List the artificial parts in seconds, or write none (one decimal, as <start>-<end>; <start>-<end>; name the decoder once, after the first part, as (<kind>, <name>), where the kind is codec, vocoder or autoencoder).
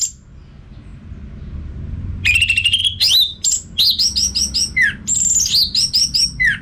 none